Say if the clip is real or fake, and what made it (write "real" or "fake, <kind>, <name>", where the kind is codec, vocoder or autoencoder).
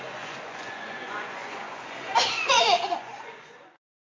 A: fake, vocoder, Vocos